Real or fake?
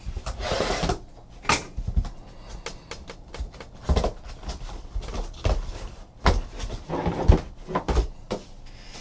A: real